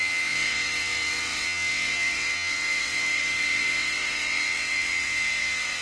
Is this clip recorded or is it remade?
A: remade